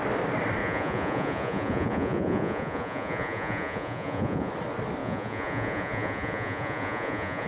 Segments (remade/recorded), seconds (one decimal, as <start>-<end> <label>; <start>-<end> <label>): 0.0-0.6 recorded; 0.6-4.5 remade; 4.5-5.0 recorded; 5.0-7.5 remade